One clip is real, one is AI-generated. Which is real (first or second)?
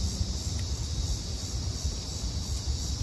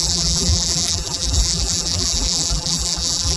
first